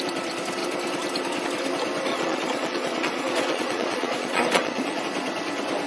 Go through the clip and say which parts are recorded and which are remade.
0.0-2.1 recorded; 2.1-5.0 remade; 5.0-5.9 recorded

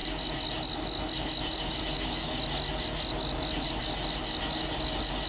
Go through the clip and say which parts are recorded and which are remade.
0.0-1.8 recorded; 1.8-2.3 remade; 2.3-5.3 recorded